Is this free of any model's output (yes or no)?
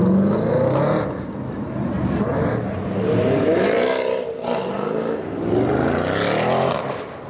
yes